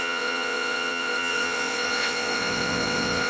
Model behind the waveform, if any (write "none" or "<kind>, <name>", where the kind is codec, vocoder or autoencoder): vocoder, WaveNeXt